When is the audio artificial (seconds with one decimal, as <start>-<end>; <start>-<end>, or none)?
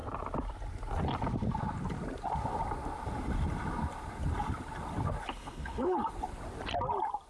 5.3-6.1